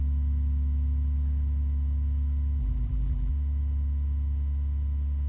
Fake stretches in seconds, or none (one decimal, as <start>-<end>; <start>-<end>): 2.6-3.3